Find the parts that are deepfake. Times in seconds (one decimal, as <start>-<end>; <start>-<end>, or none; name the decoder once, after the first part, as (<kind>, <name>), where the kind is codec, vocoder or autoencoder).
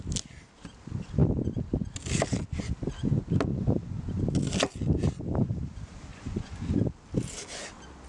3.5-4.2 (vocoder, Vocos); 6.1-6.8